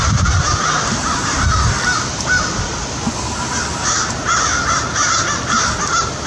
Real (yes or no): yes